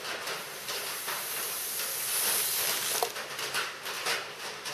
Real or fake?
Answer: real